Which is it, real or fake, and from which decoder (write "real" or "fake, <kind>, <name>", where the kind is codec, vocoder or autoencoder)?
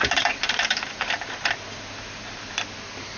real